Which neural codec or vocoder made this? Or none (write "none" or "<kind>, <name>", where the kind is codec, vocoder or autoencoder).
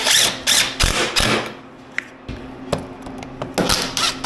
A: none